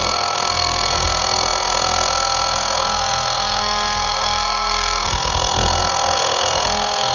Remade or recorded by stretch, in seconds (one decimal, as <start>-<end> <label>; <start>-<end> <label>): 0.0-7.1 remade